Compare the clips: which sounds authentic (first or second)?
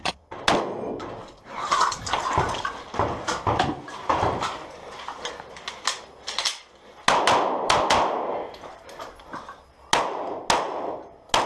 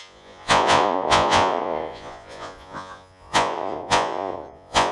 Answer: first